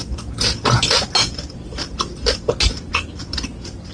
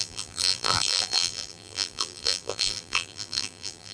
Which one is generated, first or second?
second